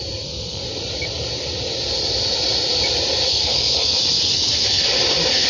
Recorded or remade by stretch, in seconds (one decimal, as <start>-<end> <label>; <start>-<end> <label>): 0.0-3.4 recorded; 3.4-3.9 remade; 3.9-5.5 recorded